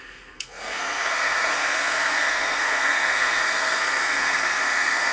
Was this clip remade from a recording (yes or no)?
yes